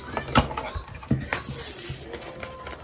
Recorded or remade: recorded